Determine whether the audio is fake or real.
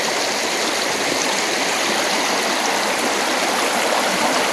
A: real